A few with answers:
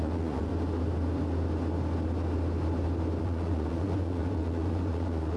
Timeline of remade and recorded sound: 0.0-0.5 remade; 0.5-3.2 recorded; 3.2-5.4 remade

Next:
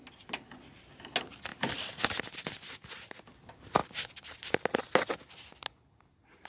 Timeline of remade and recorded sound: 0.0-6.5 recorded